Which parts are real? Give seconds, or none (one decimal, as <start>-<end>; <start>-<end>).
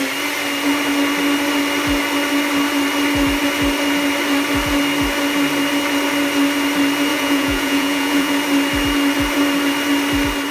0.0-7.1; 8.3-10.5